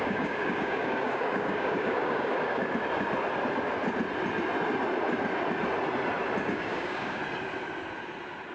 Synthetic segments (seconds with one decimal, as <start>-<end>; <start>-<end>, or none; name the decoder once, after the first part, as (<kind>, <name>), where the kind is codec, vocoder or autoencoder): 0.0-2.6 (codec, DAC); 6.4-7.2